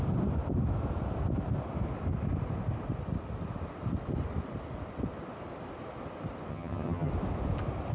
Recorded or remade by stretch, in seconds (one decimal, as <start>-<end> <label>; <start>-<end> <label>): 0.0-6.5 recorded; 6.5-7.1 remade; 7.1-7.9 recorded